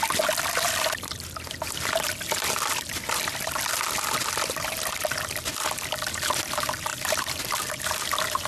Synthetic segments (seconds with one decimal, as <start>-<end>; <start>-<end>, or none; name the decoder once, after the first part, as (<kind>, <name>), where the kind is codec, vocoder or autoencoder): 6.9-7.4 (vocoder, BigVGAN v2)